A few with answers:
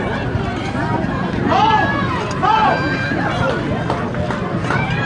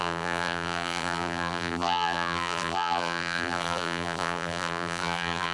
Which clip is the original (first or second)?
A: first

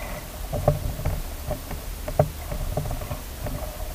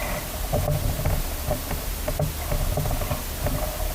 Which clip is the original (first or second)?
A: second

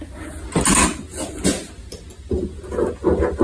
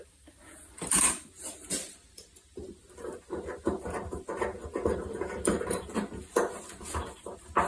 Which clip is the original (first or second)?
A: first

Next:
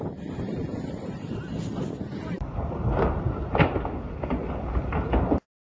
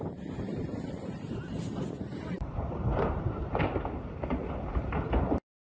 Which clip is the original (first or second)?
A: first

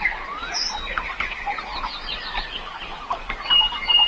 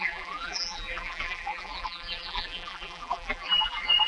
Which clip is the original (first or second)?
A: first